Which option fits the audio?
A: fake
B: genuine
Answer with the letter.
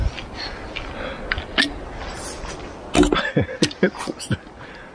B